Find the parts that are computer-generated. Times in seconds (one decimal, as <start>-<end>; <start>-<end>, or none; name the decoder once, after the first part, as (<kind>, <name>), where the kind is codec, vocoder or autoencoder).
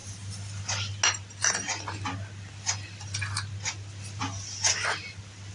none